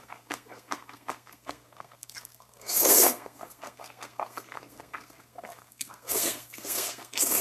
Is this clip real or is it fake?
fake